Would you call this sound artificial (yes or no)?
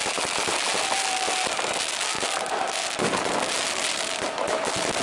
no